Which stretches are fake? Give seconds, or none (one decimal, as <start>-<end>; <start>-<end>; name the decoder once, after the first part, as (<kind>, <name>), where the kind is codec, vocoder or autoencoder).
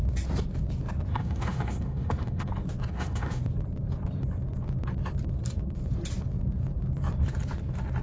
1.1-2.5 (autoencoder, DAC-VAE); 2.9-3.4